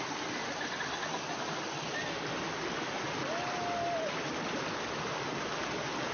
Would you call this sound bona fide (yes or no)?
yes